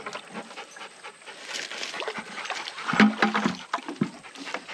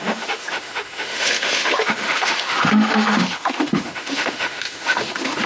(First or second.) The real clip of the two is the first